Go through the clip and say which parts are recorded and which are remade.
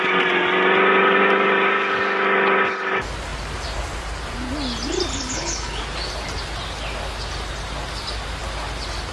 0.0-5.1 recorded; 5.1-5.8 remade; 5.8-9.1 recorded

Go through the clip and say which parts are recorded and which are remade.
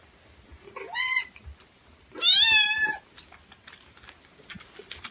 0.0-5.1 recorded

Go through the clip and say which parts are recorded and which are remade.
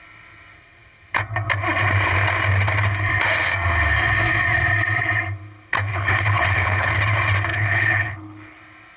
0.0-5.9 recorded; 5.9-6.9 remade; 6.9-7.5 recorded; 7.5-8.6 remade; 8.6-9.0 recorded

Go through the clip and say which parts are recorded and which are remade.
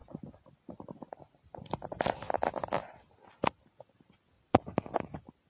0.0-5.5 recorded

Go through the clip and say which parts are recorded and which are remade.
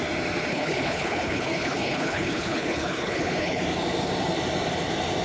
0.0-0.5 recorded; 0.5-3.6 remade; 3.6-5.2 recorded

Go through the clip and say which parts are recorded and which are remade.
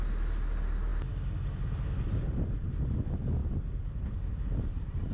0.0-5.1 recorded